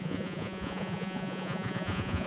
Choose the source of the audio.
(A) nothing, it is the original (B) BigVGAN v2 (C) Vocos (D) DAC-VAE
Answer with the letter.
C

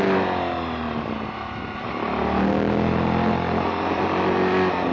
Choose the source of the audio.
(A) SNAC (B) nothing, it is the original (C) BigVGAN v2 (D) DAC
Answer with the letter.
B